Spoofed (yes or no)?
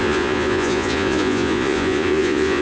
yes